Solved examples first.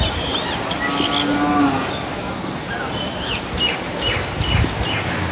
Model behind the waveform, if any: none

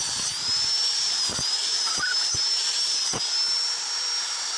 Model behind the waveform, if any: none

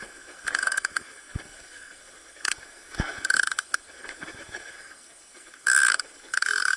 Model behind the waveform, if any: codec, SNAC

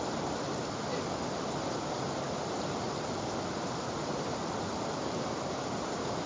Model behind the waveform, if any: none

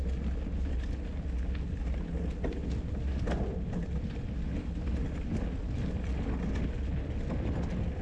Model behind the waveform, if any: none